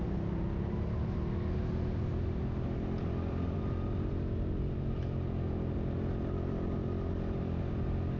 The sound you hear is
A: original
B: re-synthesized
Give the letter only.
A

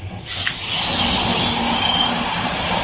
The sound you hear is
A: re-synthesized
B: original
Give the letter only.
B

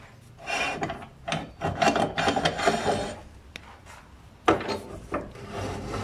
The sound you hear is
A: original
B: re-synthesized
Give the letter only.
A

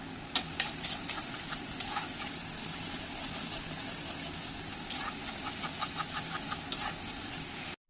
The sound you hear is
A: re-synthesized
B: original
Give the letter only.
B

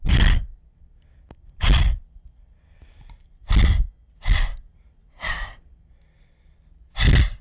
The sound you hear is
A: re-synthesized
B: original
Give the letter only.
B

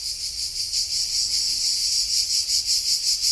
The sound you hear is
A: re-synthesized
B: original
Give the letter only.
B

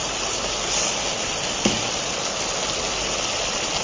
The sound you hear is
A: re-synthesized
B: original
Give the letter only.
B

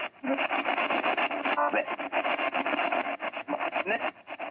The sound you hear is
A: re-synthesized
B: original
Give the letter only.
B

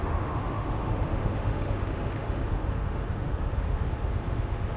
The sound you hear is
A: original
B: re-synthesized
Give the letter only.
B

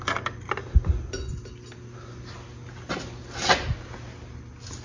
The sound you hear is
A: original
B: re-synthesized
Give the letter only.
A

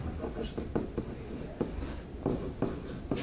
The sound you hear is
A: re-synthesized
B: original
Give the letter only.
B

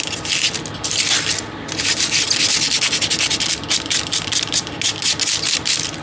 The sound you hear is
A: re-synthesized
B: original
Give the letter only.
B